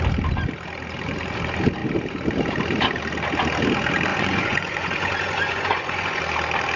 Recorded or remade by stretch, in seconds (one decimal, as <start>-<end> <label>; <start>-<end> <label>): 0.0-4.1 recorded; 4.1-6.2 remade; 6.2-6.8 recorded